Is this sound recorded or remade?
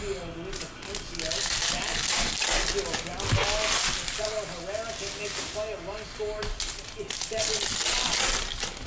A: recorded